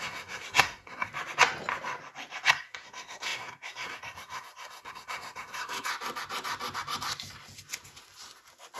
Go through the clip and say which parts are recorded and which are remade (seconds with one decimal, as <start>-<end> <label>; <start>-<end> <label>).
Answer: 0.0-1.1 remade; 1.1-2.5 recorded; 2.5-5.9 remade; 5.9-8.8 recorded